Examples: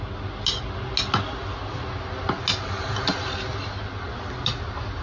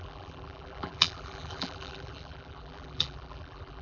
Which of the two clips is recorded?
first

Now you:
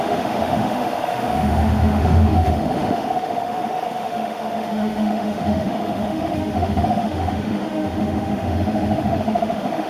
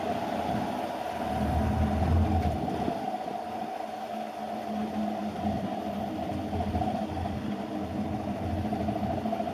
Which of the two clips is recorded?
second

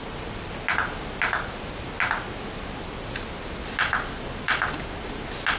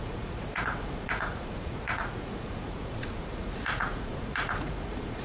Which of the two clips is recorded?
first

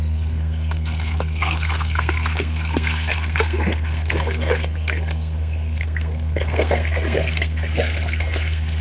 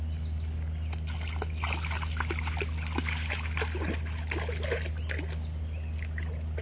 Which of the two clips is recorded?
second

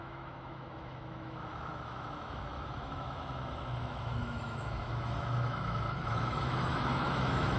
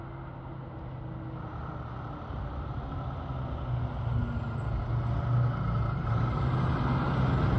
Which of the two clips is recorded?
second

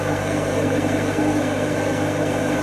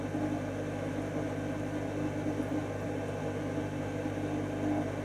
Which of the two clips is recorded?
second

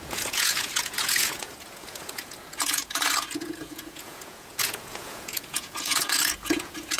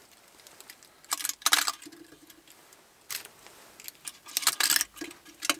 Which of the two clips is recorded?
second